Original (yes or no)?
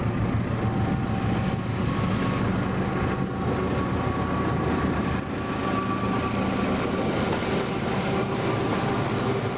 yes